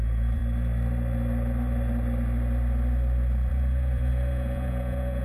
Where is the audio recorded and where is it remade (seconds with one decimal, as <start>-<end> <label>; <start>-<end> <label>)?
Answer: 0.0-0.4 remade; 0.4-3.5 recorded; 3.5-5.2 remade